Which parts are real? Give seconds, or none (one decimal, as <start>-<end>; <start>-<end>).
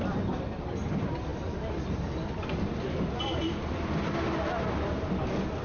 0.0-5.6